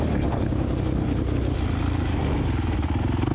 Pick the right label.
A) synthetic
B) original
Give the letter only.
B